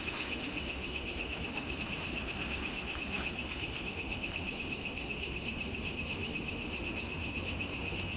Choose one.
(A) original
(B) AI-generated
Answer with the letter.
B